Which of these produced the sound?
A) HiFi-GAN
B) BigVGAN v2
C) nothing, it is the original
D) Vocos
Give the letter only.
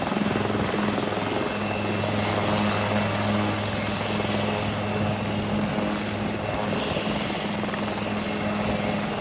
C